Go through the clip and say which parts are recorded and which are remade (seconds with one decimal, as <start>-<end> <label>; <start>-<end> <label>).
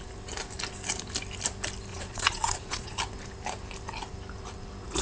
0.0-1.9 recorded; 1.9-3.0 remade; 3.0-5.0 recorded